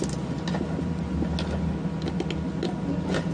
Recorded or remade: recorded